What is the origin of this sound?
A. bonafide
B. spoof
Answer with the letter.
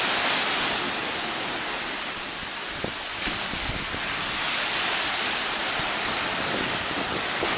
A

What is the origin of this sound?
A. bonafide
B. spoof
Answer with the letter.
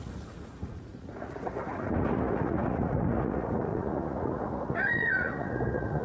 B